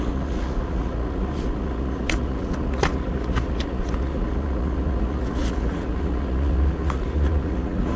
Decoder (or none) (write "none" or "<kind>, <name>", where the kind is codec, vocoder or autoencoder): vocoder, Vocos